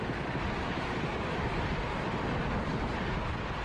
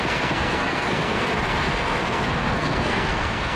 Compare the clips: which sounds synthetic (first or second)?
second